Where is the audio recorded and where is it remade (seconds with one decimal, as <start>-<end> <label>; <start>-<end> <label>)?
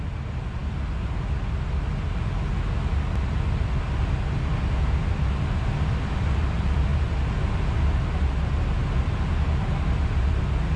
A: 0.0-10.8 recorded